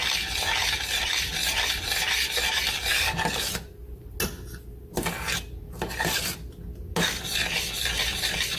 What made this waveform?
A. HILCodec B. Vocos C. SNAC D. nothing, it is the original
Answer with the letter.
D